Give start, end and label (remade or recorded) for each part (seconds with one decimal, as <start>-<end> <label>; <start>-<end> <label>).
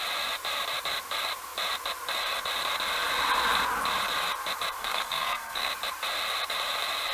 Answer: 0.0-4.8 recorded; 4.8-5.7 remade; 5.7-7.1 recorded